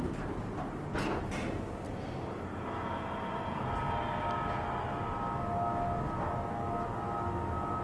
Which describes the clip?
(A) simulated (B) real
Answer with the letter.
B